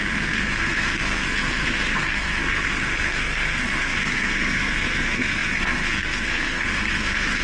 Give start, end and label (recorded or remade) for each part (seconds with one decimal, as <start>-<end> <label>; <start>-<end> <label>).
0.0-7.4 remade